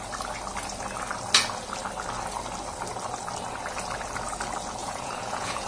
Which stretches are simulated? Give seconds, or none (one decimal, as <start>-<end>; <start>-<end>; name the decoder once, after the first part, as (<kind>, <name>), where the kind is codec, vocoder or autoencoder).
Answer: 4.8-5.7 (vocoder, Vocos)